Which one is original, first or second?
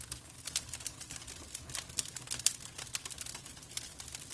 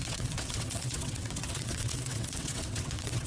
first